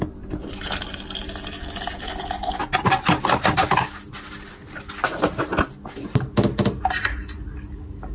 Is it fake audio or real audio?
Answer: real